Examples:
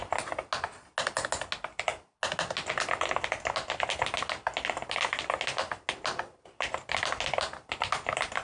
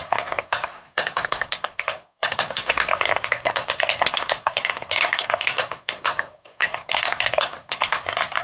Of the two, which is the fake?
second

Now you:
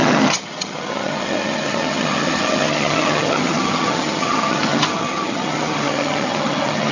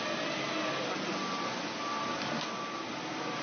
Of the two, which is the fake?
first